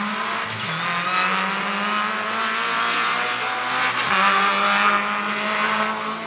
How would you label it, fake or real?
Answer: real